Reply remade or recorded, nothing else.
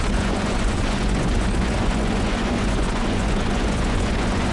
remade